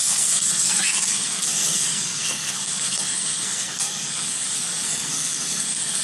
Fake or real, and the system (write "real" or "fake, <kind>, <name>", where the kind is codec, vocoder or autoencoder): fake, codec, SNAC